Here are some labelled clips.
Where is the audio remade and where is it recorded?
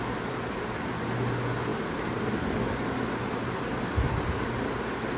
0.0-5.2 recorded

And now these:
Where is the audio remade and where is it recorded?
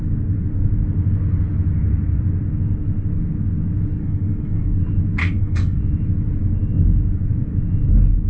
0.0-4.0 recorded; 4.0-4.8 remade; 4.8-5.2 recorded; 5.2-5.8 remade; 5.8-8.3 recorded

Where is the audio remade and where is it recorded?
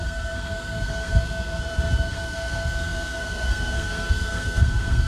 0.0-5.1 remade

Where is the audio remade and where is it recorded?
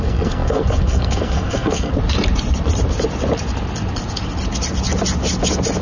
0.0-1.9 remade; 1.9-5.8 recorded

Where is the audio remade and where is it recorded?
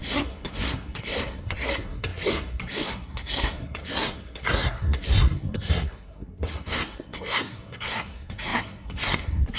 0.0-9.6 remade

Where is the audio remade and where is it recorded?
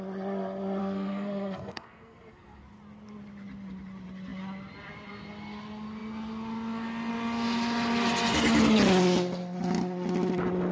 0.0-0.8 recorded; 0.8-2.6 remade; 2.6-10.7 recorded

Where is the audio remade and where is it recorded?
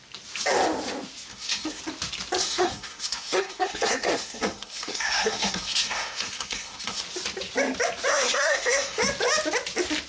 0.0-1.3 recorded; 1.3-1.8 remade; 1.8-2.4 recorded; 2.4-7.0 remade; 7.0-8.1 recorded; 8.1-9.0 remade; 9.0-10.1 recorded